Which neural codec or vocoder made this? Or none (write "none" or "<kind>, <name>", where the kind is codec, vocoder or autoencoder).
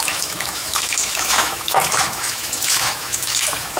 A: autoencoder, DAC-VAE